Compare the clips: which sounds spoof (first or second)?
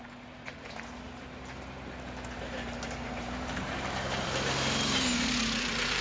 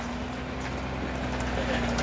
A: first